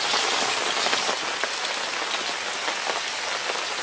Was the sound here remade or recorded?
recorded